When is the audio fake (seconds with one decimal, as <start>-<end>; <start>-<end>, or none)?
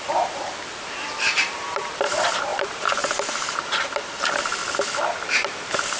0.0-4.6; 5.1-6.0